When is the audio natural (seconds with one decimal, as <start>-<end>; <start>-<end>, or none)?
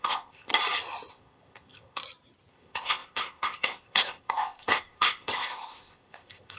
0.5-1.1; 2.0-2.5